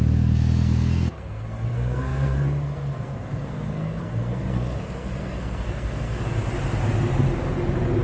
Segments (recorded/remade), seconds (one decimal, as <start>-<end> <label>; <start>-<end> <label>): 0.0-6.2 remade; 6.2-8.0 recorded